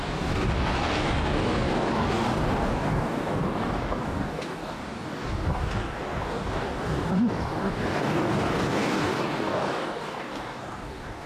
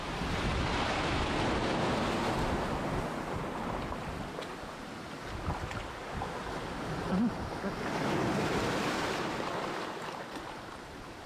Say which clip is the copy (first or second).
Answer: first